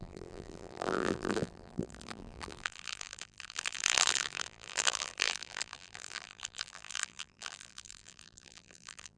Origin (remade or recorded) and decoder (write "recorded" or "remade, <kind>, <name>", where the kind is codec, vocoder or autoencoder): remade, vocoder, BigVGAN v2